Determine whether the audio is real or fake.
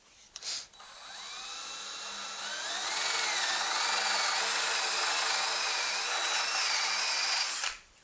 real